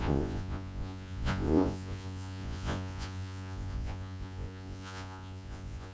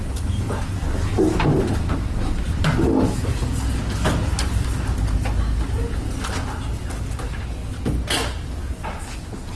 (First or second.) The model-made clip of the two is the first